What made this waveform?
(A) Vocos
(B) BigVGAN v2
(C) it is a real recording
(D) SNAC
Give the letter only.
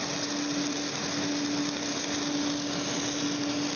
C